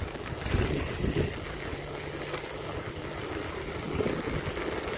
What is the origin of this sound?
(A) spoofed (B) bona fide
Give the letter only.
B